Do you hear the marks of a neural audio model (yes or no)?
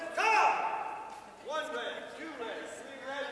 no